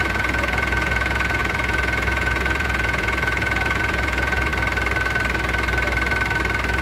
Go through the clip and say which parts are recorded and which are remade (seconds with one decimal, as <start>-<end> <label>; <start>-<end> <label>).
0.0-4.5 remade; 4.5-6.8 recorded